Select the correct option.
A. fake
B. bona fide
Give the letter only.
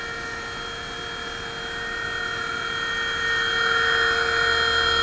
B